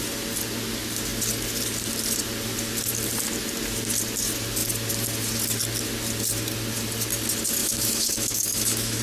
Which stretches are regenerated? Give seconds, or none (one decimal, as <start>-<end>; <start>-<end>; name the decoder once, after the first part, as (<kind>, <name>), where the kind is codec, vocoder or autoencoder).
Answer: 7.6-9.0 (autoencoder, DAC-VAE)